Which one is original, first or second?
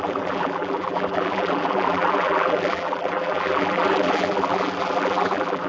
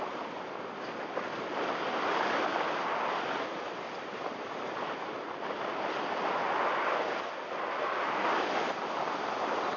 second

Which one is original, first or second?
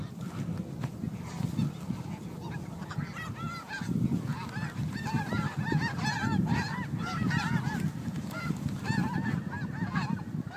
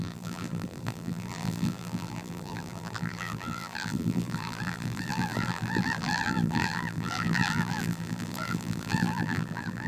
first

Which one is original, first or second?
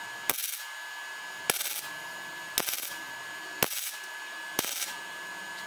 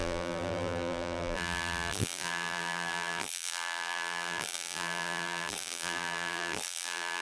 first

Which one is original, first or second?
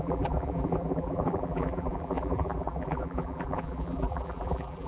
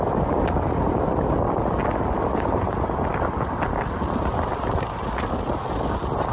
second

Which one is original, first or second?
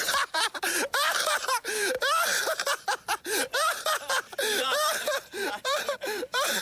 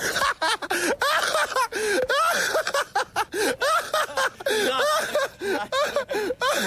second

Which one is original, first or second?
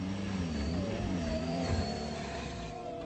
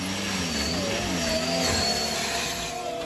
second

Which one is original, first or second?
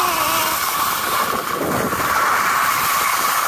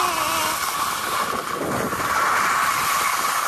second